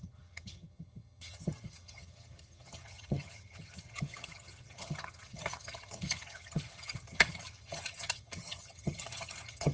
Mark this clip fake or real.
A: fake